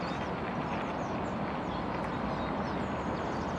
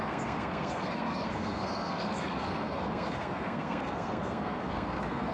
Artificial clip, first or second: second